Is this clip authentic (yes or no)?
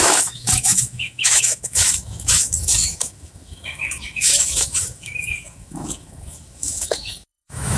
no